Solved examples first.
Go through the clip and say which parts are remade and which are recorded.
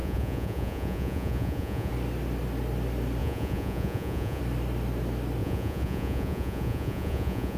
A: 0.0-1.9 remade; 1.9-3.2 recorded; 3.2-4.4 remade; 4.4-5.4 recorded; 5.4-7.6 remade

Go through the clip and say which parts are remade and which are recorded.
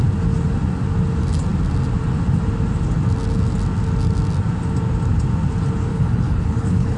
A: 0.0-5.9 recorded; 5.9-7.0 remade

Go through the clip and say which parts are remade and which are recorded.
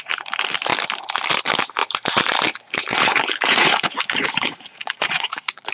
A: 0.0-2.9 recorded; 2.9-5.7 remade